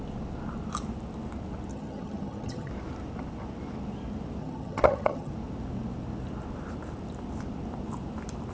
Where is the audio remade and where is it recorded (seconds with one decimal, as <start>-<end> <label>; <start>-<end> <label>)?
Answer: 0.0-1.7 recorded; 1.7-2.7 remade; 2.7-4.4 recorded; 4.4-5.3 remade; 5.3-8.5 recorded